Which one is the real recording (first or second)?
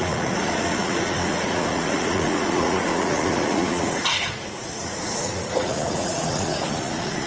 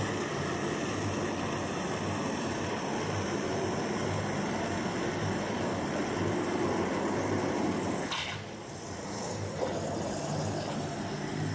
second